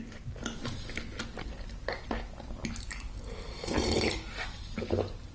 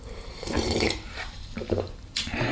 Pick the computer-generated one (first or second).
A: second